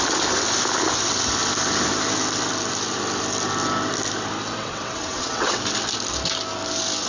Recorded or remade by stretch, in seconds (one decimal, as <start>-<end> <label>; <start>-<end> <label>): 0.0-4.6 recorded; 4.6-5.6 remade; 5.6-7.1 recorded

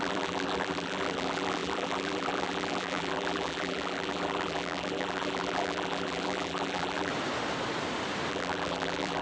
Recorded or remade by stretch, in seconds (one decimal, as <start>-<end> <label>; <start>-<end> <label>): 0.0-7.1 remade; 7.1-8.3 recorded; 8.3-9.2 remade

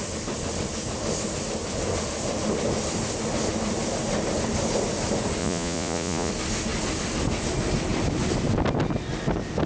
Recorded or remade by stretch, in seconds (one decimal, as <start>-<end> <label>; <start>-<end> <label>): 0.0-5.4 recorded; 5.4-6.3 remade; 6.3-9.7 recorded

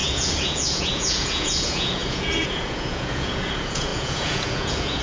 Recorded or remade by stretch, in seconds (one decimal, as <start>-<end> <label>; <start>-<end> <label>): 0.0-5.0 remade

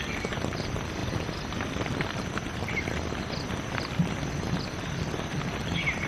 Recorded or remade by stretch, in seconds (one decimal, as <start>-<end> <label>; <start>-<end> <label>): 0.0-6.1 recorded

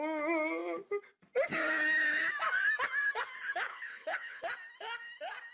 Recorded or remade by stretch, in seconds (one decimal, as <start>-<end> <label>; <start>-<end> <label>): 0.0-3.7 recorded; 3.7-4.4 remade; 4.4-5.5 recorded

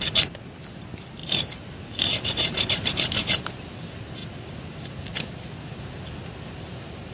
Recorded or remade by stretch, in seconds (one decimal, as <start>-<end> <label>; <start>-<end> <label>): 0.0-1.2 recorded; 1.2-3.7 remade; 3.7-7.1 recorded